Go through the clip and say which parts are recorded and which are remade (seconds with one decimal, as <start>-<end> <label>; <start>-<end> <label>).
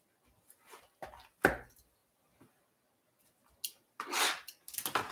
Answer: 0.0-5.1 recorded